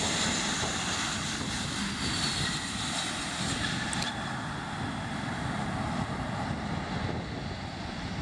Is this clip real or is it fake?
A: real